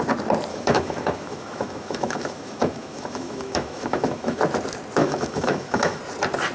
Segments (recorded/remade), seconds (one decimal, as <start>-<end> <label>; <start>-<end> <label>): 0.0-0.5 recorded; 0.5-4.4 remade; 4.4-5.0 recorded; 5.0-6.0 remade; 6.0-6.5 recorded